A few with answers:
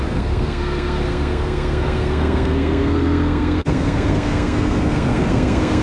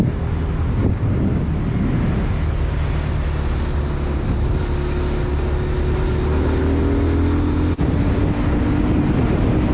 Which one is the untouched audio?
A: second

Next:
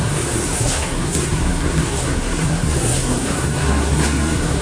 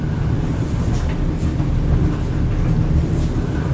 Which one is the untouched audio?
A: second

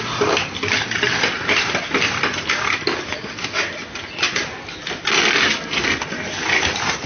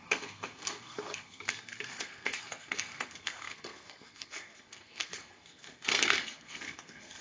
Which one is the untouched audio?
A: first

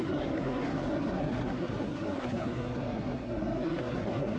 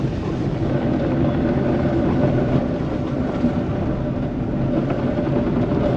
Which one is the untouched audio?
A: second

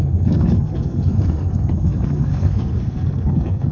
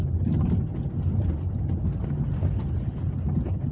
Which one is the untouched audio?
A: second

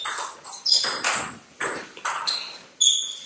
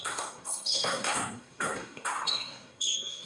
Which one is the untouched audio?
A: first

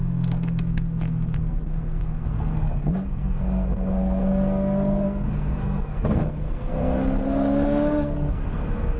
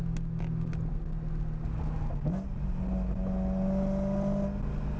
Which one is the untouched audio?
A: second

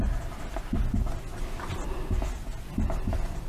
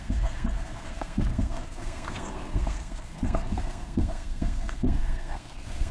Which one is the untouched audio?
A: first